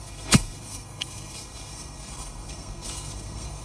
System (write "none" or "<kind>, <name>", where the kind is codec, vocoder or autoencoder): codec, SNAC